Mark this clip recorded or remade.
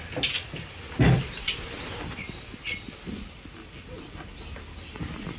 recorded